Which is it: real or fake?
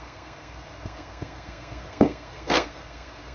fake